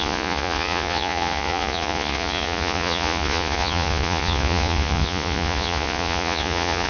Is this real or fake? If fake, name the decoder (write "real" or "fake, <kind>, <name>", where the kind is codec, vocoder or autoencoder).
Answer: fake, vocoder, Vocos